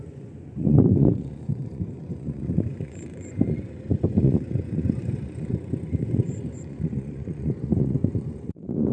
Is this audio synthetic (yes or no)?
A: yes